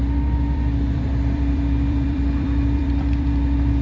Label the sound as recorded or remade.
remade